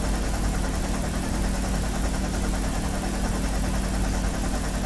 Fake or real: real